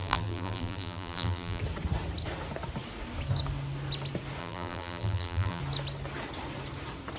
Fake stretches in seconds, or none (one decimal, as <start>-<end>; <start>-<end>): 0.0-1.6; 4.4-5.6